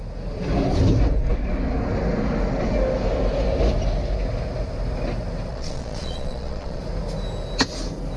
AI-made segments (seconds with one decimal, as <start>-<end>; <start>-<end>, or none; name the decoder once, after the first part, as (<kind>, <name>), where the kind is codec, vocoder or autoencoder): 5.5-6.8 (vocoder, Vocos)